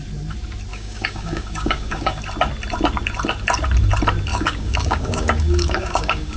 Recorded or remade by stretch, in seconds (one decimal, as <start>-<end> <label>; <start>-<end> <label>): 0.0-0.7 recorded; 0.7-2.2 remade; 2.2-4.3 recorded; 4.3-6.4 remade